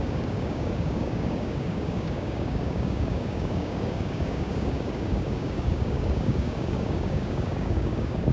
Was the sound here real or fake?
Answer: fake